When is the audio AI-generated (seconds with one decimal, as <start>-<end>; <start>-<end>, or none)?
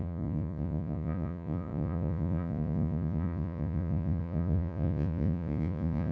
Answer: 0.0-6.1